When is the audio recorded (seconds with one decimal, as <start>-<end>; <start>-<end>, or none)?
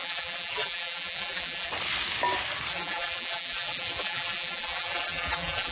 1.7-2.7